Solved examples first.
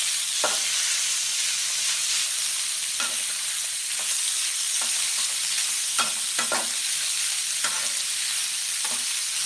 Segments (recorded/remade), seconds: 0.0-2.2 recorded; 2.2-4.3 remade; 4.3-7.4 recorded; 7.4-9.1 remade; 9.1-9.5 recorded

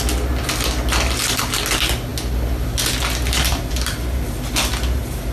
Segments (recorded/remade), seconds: 0.0-5.3 recorded